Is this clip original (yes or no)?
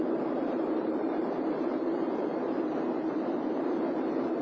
no